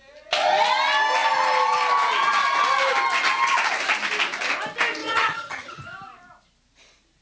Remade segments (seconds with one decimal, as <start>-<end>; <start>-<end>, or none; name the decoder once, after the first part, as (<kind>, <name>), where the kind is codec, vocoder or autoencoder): 5.0-5.8 (vocoder, HiFi-GAN)